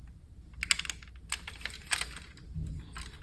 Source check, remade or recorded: recorded